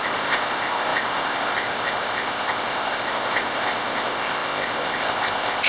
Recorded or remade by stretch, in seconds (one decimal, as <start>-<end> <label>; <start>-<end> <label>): 0.0-5.7 remade